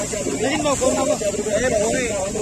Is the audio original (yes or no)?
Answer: yes